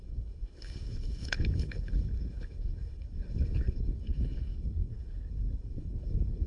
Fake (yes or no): yes